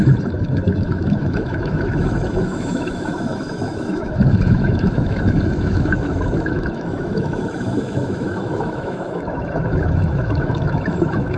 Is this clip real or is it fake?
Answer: fake